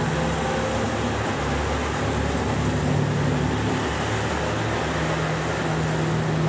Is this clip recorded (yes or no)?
yes